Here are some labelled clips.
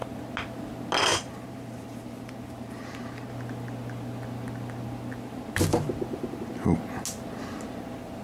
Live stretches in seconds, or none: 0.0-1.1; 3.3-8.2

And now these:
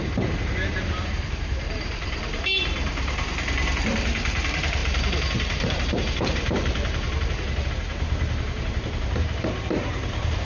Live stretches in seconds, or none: none

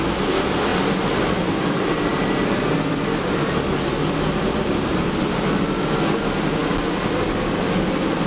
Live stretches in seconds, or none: 0.0-2.1; 2.6-4.6; 5.1-8.3

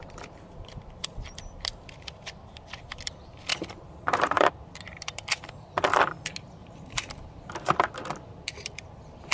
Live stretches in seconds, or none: 0.0-3.5; 4.5-6.6; 7.5-9.3

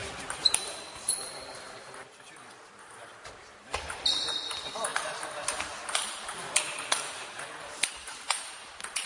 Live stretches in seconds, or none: none

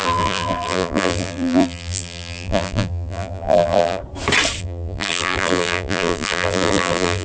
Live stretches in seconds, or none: 4.0-4.6